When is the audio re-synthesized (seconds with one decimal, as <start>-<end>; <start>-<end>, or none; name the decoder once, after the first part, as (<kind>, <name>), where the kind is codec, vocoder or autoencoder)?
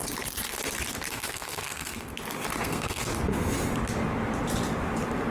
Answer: 1.1-2.1 (codec, SNAC); 2.6-3.1